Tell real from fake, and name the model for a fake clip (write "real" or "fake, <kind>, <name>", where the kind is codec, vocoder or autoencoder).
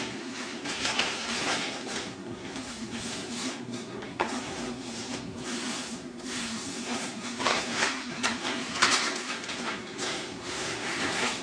fake, codec, SNAC